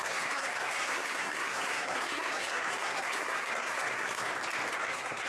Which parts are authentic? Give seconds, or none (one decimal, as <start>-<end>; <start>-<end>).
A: 4.3-4.8